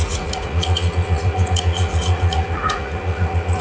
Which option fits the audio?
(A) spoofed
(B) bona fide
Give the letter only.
A